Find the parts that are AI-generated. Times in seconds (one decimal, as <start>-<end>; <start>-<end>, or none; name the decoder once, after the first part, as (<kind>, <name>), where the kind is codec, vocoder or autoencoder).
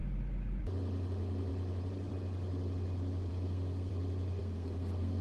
3.3-3.9 (codec, SNAC); 4.4-5.2